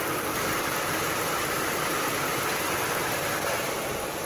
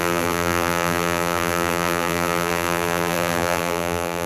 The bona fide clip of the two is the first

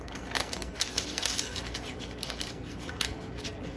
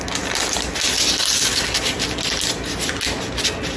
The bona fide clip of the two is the second